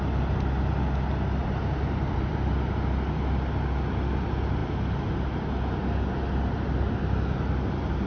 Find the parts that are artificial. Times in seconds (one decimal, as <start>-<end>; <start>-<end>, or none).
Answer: 1.4-2.3